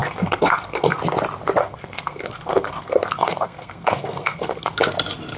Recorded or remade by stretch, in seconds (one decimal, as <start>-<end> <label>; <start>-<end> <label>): 0.0-1.0 remade; 1.0-1.6 recorded; 1.6-4.8 remade; 4.8-5.4 recorded